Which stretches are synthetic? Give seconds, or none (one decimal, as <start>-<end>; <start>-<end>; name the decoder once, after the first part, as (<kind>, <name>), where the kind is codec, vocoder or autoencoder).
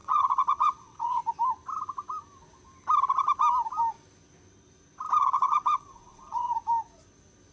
0.0-1.2 (vocoder, WaveNeXt); 5.2-6.5